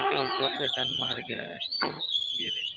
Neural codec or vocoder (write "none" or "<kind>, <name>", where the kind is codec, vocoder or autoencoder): vocoder, HiFi-GAN